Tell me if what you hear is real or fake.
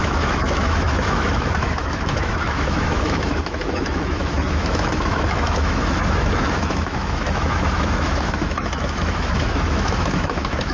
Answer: fake